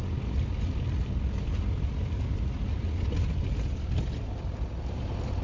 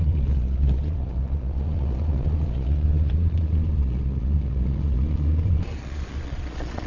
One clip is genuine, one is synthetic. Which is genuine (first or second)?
first